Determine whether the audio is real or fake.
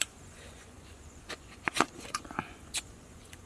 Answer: fake